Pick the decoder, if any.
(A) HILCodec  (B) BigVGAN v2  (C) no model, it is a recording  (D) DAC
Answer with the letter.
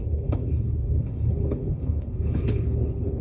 A